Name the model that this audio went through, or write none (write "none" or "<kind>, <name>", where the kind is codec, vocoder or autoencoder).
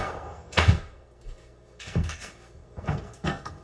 codec, SNAC